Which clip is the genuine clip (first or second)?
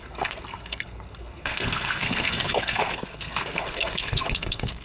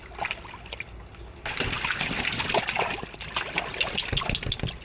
second